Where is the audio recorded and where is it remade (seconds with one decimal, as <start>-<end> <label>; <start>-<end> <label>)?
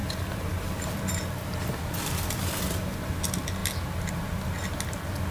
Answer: 0.0-3.2 remade; 3.2-5.3 recorded